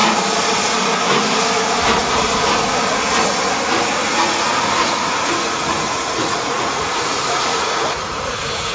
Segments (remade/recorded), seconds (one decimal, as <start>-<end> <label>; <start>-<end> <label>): 0.0-3.8 recorded; 3.8-8.7 remade